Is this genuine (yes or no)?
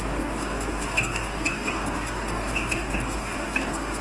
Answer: no